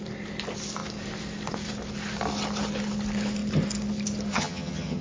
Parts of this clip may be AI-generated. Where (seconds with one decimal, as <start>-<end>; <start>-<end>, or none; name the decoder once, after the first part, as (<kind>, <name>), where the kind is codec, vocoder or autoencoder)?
4.3-5.0 (vocoder, HiFi-GAN)